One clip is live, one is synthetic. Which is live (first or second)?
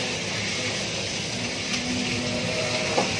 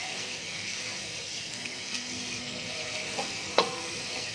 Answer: first